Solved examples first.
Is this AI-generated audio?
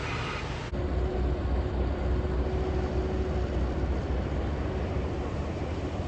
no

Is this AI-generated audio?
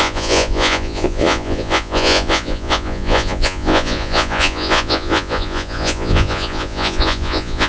yes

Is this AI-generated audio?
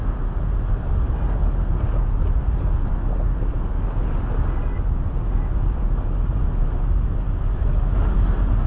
no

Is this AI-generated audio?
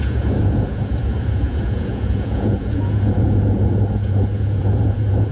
yes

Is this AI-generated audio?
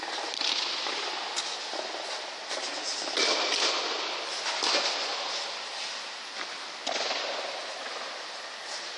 no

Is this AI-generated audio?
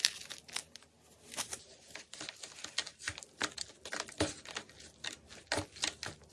no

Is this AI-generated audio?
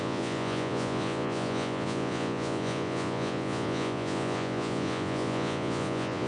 yes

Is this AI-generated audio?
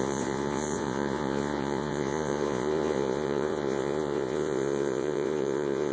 yes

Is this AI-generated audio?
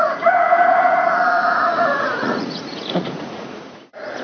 yes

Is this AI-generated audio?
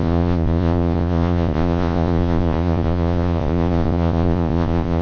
yes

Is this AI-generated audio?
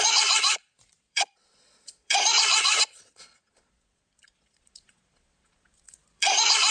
yes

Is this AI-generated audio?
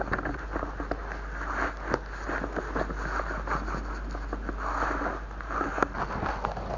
no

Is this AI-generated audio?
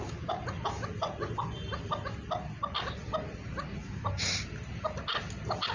no